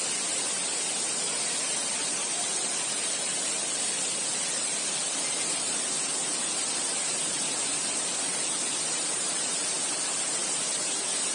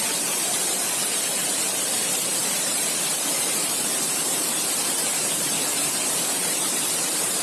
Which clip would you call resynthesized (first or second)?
second